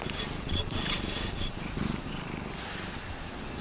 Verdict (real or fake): real